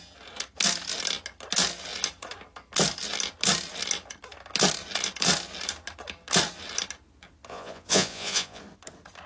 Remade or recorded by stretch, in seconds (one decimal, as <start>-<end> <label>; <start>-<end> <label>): 0.0-7.5 recorded; 7.5-8.6 remade; 8.6-9.3 recorded